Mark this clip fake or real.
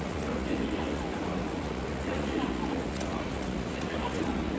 fake